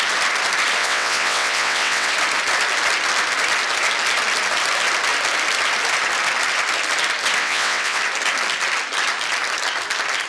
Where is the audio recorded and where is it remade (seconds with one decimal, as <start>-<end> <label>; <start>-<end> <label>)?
0.0-0.8 recorded; 0.8-2.1 remade; 2.1-7.4 recorded; 7.4-8.0 remade; 8.0-10.3 recorded